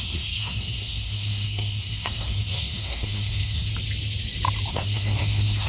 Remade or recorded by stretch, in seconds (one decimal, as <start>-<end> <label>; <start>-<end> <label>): 0.0-3.7 remade; 3.7-4.7 recorded; 4.7-5.7 remade